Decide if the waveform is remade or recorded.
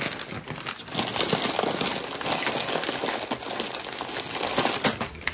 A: recorded